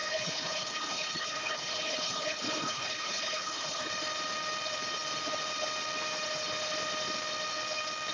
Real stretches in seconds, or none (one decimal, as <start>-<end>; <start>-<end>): 3.9-8.1